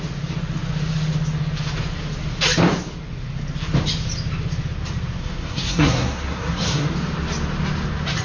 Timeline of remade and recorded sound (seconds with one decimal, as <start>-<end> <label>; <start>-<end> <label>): 0.0-5.2 recorded; 5.2-6.9 remade; 6.9-8.2 recorded